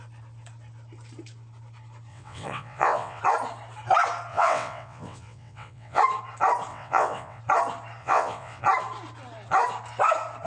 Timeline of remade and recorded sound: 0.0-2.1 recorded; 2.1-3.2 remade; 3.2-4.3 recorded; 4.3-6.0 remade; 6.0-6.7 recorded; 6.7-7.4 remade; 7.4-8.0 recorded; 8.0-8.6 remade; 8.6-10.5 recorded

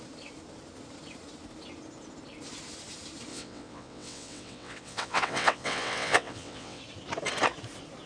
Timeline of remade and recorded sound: 0.0-3.3 recorded; 3.3-6.8 remade; 6.8-8.1 recorded

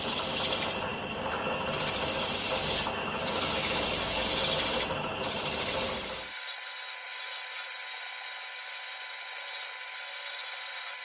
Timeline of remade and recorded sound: 0.0-11.0 recorded

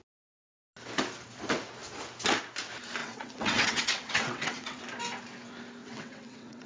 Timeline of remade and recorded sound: 0.0-3.0 recorded; 3.0-4.8 remade; 4.8-5.8 recorded; 5.8-6.7 remade

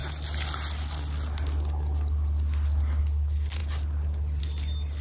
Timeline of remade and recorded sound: 0.0-5.0 recorded

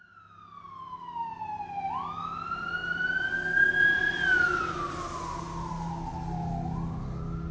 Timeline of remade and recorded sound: 0.0-7.5 recorded

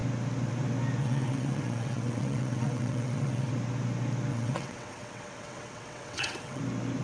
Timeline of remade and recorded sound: 0.0-1.0 recorded; 1.0-3.5 remade; 3.5-4.3 recorded; 4.3-6.6 remade; 6.6-7.0 recorded